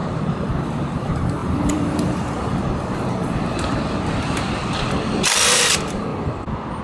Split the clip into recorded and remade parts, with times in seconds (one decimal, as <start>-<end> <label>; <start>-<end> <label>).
0.0-0.5 remade; 0.5-1.4 recorded; 1.4-2.6 remade; 2.6-3.2 recorded; 3.2-4.4 remade; 4.4-6.8 recorded